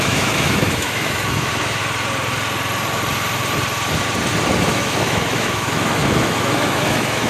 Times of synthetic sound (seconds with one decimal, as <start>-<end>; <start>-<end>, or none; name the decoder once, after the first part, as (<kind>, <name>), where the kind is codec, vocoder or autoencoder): 0.0-1.8 (autoencoder, DAC-VAE); 4.6-7.3